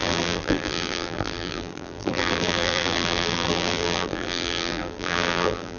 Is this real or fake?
fake